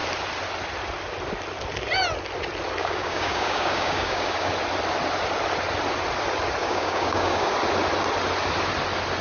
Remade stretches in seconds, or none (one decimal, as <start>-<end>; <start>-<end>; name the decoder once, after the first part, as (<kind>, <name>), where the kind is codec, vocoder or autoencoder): 2.8-4.5 (codec, DAC); 6.6-7.5